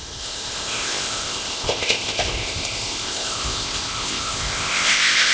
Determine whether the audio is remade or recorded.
remade